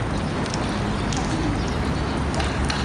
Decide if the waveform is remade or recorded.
recorded